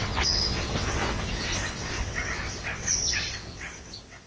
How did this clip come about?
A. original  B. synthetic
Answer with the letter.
B